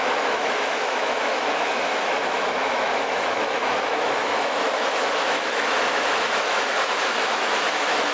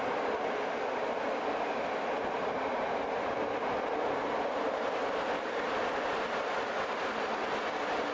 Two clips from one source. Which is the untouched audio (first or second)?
second